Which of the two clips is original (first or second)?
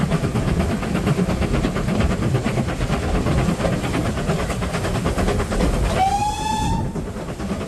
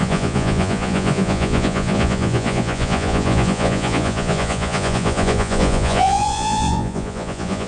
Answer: first